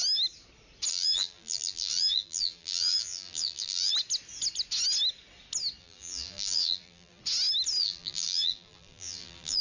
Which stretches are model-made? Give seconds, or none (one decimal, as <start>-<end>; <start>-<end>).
0.9-3.9; 5.8-7.2; 7.8-9.6